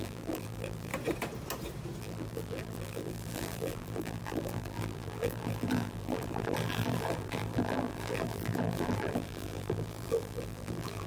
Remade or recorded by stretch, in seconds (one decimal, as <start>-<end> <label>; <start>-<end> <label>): 0.0-0.9 remade; 0.9-2.0 recorded; 2.0-11.1 remade